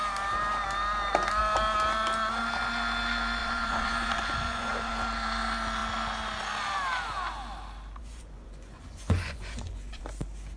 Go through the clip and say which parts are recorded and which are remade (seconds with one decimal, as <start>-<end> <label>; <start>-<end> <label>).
0.0-3.4 recorded; 3.4-4.9 remade; 4.9-8.0 recorded; 8.0-10.0 remade; 10.0-10.6 recorded